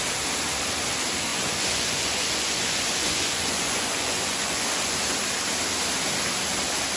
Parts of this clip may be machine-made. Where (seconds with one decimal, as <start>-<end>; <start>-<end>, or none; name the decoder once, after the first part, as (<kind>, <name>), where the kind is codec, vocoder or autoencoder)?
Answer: 1.3-5.0 (vocoder, Vocos)